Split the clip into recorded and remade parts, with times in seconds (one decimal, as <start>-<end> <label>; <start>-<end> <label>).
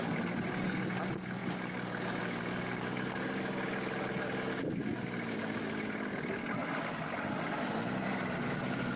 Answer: 0.0-9.0 recorded